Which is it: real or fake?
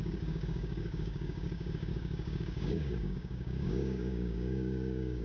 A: fake